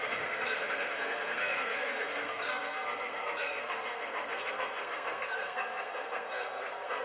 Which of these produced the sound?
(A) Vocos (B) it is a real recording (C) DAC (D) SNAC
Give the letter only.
D